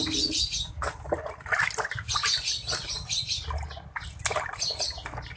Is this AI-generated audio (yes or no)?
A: no